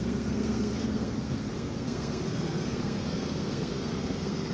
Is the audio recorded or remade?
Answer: remade